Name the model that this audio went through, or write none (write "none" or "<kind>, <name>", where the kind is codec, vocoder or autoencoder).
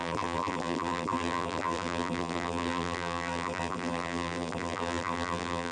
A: vocoder, BigVGAN v2